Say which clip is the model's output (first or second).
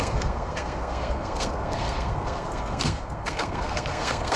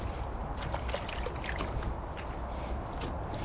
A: first